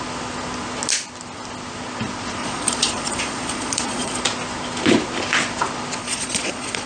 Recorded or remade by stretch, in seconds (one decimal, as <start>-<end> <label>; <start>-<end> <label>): 0.0-2.4 recorded; 2.4-4.2 remade; 4.2-6.0 recorded; 6.0-6.9 remade